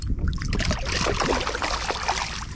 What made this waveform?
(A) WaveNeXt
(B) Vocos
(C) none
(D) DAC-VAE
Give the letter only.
C